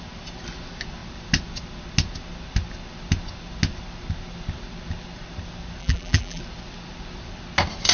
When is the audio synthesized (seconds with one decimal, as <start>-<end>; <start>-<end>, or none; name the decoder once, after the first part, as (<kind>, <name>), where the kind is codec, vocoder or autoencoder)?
5.8-6.4 (vocoder, BigVGAN v2)